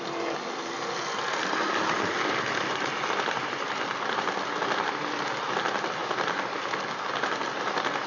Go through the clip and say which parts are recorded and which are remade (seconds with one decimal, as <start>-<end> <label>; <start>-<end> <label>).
0.0-8.1 recorded